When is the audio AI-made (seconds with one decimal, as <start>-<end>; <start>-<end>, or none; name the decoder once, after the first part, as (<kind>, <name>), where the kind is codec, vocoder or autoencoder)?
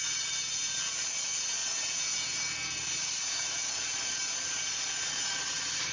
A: none